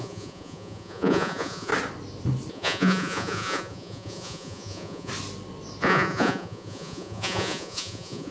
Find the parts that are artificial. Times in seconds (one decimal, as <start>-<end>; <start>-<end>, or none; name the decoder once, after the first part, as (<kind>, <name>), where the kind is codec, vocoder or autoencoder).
0.0-1.7 (vocoder, Vocos); 2.5-5.1; 5.8-8.3